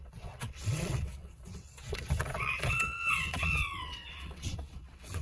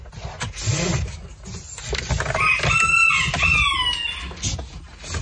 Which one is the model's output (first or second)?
first